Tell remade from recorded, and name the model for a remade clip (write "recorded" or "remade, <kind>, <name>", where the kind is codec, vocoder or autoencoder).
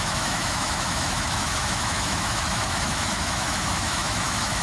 remade, autoencoder, DAC-VAE